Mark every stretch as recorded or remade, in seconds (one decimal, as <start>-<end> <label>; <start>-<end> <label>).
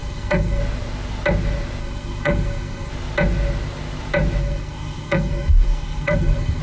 0.0-0.6 remade; 0.6-1.8 recorded; 1.8-2.9 remade; 2.9-4.4 recorded; 4.4-6.6 remade